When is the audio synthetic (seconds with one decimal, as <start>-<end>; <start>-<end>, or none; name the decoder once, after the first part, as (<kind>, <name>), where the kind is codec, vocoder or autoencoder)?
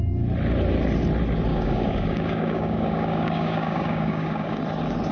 1.5-4.6 (codec, DAC)